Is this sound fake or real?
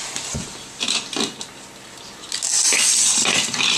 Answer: real